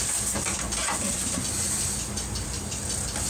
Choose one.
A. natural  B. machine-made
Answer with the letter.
B